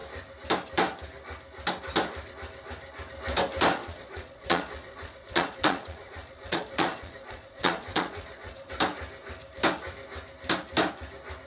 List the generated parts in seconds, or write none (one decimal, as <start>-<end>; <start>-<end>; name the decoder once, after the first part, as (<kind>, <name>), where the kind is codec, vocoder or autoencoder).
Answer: 3.8-8.7 (vocoder, Vocos)